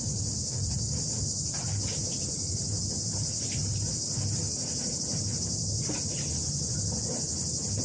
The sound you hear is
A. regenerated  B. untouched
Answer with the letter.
B